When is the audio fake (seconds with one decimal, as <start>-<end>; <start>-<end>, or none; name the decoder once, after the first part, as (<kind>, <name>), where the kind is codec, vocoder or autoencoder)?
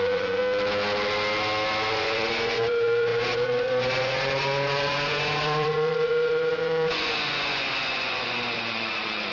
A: 0.0-0.4 (vocoder, Vocos); 1.9-9.3